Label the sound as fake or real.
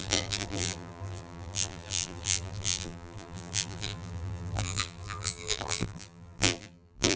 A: fake